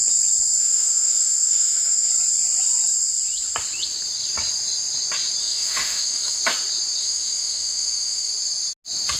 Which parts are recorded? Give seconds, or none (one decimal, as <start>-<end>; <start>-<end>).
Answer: 0.0-0.6; 2.1-5.4; 6.4-7.0; 8.3-9.2